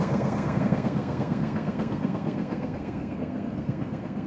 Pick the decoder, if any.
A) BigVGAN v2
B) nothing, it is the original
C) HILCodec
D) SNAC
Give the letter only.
D